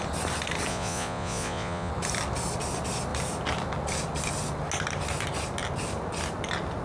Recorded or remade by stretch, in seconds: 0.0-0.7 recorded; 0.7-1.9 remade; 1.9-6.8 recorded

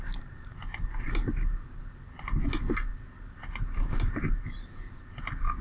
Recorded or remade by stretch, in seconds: 0.0-5.6 recorded

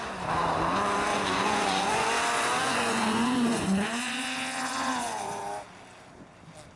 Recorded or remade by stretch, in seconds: 0.0-1.1 recorded; 1.1-2.1 remade; 2.1-2.6 recorded; 2.6-5.4 remade; 5.4-6.8 recorded